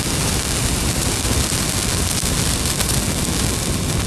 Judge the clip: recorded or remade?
recorded